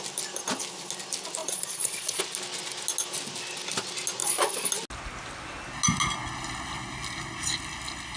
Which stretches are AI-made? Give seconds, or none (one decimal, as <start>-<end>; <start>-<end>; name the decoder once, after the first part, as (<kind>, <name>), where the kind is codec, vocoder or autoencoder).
1.4-2.2 (vocoder, Vocos); 4.2-4.7